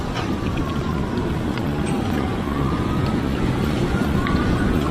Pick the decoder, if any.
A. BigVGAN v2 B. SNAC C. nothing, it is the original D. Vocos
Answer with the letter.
D